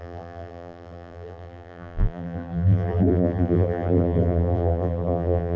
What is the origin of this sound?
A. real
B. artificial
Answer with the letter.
B